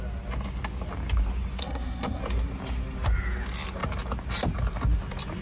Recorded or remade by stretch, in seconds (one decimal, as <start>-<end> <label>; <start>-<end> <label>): 0.0-1.6 recorded; 1.6-2.2 remade; 2.2-5.4 recorded